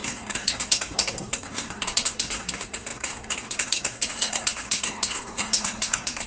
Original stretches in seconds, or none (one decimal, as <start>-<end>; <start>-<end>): none